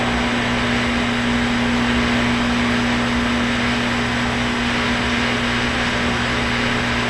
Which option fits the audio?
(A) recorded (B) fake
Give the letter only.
A